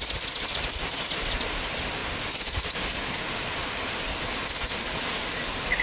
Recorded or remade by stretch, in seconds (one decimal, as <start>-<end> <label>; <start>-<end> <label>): 0.0-5.8 recorded